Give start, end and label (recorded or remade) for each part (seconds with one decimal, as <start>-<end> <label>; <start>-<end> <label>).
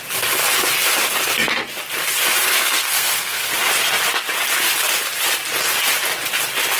0.0-2.5 recorded; 2.5-3.5 remade; 3.5-6.8 recorded